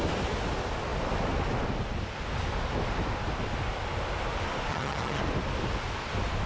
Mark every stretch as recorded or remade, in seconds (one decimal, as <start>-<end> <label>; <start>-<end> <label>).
0.0-4.7 recorded; 4.7-5.2 remade; 5.2-6.5 recorded